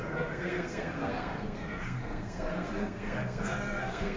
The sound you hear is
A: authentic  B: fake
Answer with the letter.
B